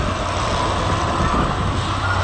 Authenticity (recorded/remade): recorded